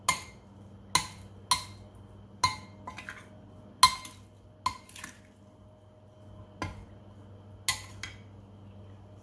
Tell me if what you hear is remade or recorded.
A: recorded